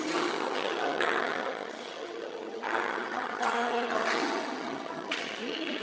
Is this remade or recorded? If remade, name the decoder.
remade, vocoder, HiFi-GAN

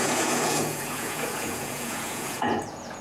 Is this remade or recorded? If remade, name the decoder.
remade, vocoder, Vocos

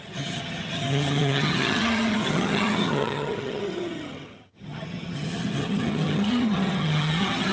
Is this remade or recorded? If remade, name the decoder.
remade, vocoder, HiFi-GAN